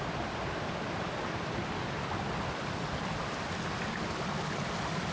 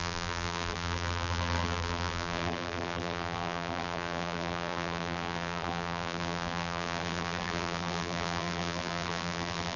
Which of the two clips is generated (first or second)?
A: second